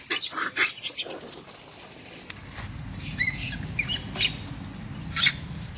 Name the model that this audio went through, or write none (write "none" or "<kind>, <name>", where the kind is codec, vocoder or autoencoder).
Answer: none